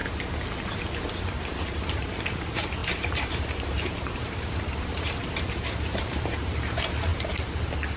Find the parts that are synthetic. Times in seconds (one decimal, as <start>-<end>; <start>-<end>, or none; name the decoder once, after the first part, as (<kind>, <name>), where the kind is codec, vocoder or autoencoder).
1.2-7.1 (vocoder, BigVGAN v2)